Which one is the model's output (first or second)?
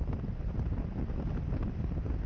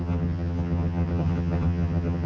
second